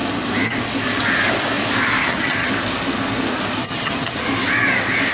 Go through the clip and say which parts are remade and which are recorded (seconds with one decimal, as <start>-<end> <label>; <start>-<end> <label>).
0.0-2.0 recorded; 2.0-2.5 remade; 2.5-3.6 recorded; 3.6-4.2 remade; 4.2-5.1 recorded